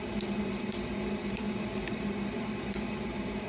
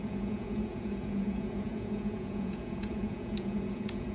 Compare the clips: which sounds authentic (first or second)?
first